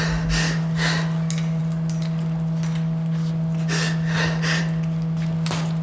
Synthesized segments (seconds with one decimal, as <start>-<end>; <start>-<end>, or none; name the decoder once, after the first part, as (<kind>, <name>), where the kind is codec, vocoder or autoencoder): none